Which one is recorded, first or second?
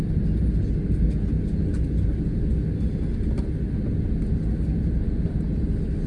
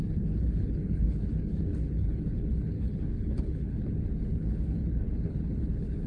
first